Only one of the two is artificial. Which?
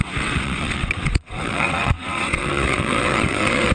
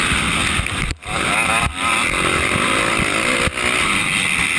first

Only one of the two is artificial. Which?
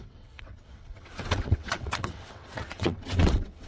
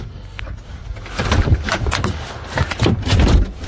first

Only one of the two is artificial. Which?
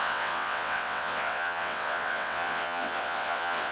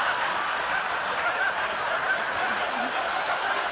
first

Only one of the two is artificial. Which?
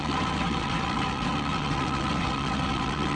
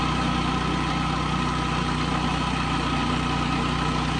first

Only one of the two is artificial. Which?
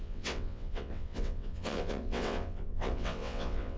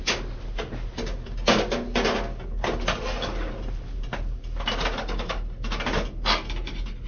first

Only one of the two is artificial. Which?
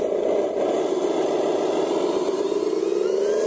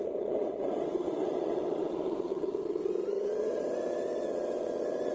second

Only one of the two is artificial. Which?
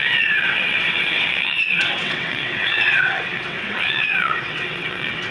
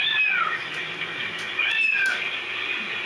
first